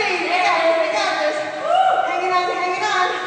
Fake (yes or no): no